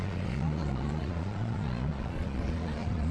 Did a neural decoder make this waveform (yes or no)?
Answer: yes